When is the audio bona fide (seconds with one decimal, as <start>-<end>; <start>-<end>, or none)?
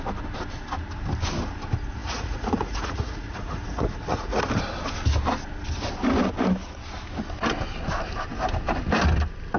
0.0-2.0; 4.5-9.6